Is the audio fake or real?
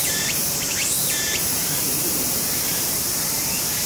fake